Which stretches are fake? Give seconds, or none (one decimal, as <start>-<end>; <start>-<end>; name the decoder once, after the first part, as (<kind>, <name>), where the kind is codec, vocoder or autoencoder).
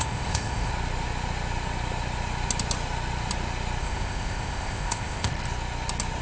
0.0-0.7 (codec, ZipCodec); 3.8-5.3